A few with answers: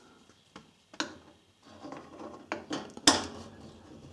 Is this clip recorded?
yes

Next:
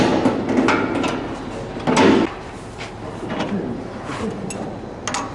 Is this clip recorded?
yes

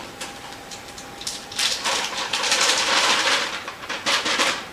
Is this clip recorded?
no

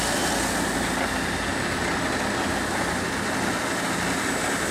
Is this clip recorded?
yes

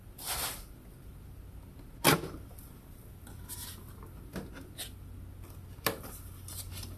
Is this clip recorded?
yes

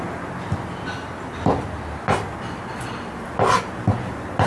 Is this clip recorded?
yes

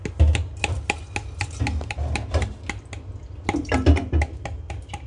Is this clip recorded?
yes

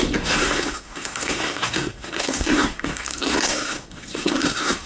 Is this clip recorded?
no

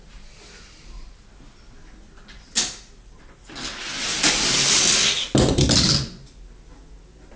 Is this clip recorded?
yes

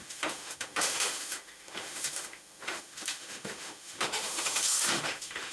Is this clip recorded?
no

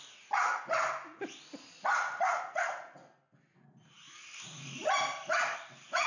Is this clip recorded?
yes